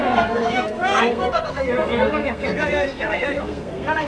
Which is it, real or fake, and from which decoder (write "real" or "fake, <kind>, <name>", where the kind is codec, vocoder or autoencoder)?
fake, codec, SNAC